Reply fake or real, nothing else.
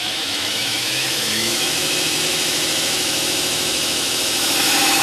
fake